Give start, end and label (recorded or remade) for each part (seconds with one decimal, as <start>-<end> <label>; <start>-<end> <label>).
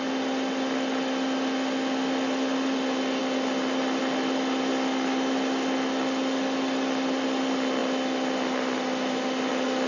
0.0-9.9 recorded